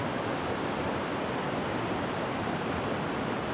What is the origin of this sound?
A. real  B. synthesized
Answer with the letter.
A